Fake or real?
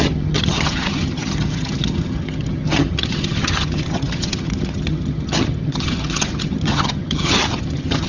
fake